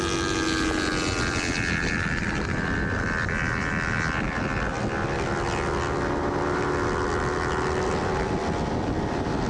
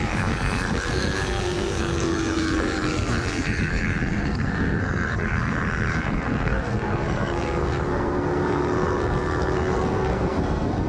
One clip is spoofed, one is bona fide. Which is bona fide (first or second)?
first